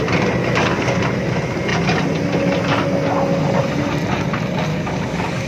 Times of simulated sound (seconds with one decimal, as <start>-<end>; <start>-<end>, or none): 0.4-1.0; 4.7-5.5